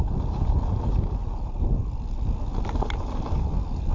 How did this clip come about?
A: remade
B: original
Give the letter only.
B